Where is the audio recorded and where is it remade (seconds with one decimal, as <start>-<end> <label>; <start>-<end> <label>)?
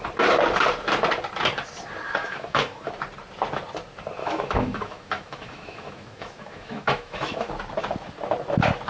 0.0-2.2 recorded; 2.2-2.9 remade; 2.9-4.2 recorded; 4.2-7.5 remade; 7.5-8.9 recorded